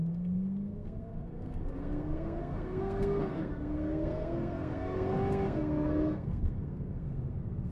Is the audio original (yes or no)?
no